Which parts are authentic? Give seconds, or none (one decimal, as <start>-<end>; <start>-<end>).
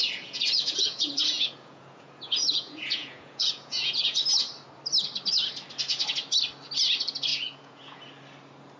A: 4.2-7.3; 8.0-8.8